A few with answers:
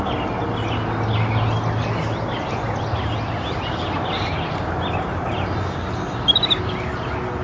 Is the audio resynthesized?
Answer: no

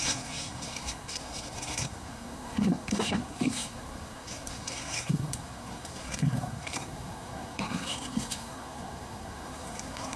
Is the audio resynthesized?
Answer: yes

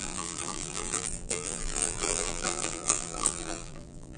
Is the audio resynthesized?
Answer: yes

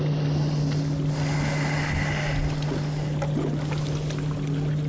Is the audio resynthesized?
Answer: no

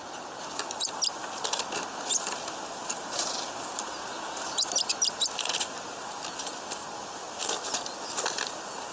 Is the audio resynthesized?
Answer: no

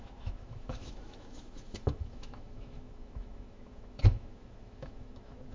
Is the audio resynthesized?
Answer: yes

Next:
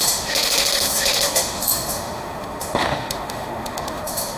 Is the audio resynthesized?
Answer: yes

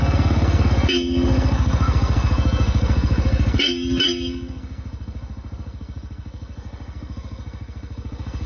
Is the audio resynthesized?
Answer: yes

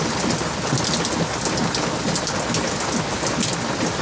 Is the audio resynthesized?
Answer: no